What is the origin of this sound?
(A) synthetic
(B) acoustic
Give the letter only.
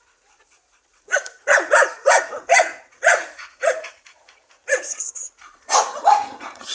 A